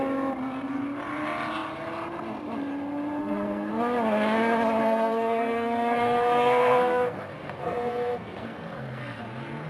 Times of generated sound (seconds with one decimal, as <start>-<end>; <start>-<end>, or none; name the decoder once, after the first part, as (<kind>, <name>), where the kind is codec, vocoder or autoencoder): 3.2-3.7 (codec, SNAC); 4.8-9.2